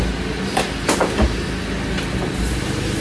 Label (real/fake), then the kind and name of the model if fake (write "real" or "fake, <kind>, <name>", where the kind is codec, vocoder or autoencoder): real